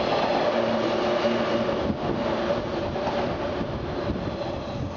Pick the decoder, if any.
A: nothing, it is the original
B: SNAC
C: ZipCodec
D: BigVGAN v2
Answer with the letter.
A